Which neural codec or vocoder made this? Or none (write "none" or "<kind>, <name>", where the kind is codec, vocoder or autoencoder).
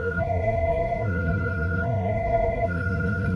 codec, SNAC